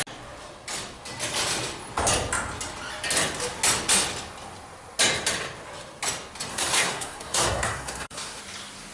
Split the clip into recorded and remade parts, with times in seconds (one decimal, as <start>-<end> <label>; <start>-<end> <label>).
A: 0.0-6.5 recorded; 6.5-8.4 remade; 8.4-8.9 recorded